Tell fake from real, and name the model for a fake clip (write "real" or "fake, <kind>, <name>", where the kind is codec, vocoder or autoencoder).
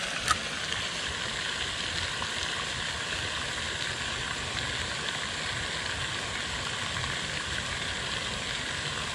real